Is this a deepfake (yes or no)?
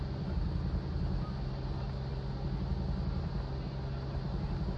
no